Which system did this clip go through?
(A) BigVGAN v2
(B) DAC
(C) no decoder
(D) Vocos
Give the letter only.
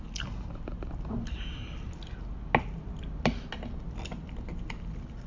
C